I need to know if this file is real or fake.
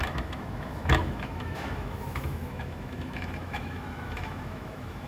fake